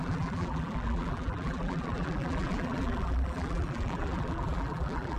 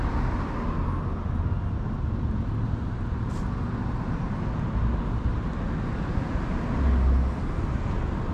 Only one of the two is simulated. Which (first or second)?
first